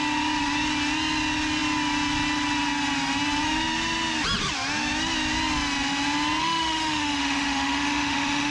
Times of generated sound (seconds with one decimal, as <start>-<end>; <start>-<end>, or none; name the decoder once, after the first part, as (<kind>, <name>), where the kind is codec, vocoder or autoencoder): 6.4-8.5 (autoencoder, DAC-VAE)